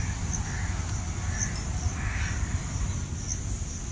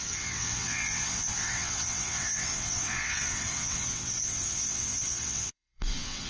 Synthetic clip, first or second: second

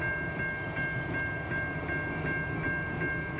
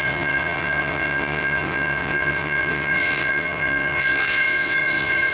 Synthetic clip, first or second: second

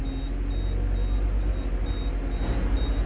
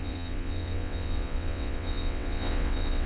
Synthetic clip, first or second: second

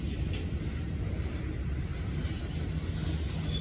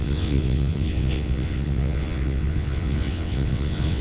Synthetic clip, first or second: second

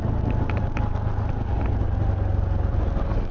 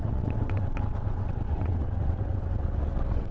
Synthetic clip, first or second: second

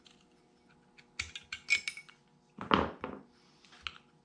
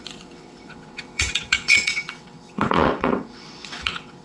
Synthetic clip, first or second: second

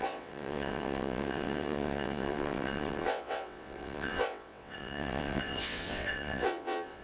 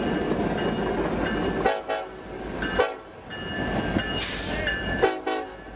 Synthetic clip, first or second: first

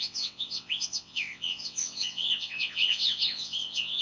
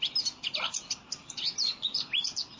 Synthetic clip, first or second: first